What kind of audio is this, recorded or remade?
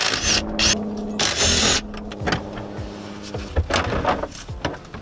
recorded